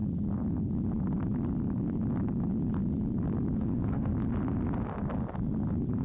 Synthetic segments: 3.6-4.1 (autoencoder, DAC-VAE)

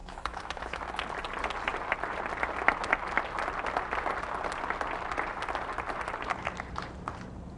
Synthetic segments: 0.0-0.8 (autoencoder, DAC-VAE)